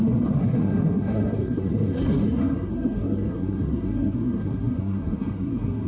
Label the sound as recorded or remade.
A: remade